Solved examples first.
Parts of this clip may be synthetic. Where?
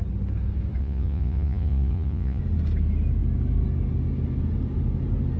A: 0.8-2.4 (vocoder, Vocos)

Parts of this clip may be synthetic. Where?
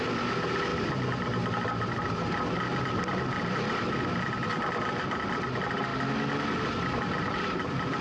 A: none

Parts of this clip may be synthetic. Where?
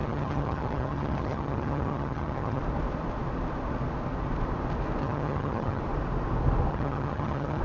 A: 0.0-2.6 (vocoder, HiFi-GAN); 5.0-5.8; 6.7-7.6